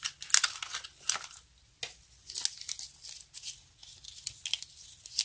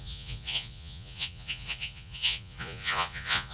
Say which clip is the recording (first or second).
first